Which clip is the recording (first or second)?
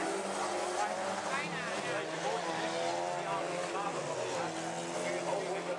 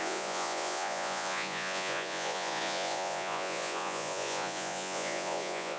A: first